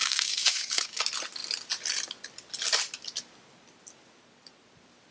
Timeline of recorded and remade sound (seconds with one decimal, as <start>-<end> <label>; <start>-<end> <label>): 0.0-1.0 remade; 1.0-5.1 recorded